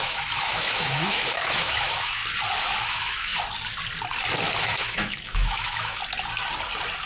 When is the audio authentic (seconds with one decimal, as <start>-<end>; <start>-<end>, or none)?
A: 2.2-2.8; 3.3-4.6; 6.0-7.1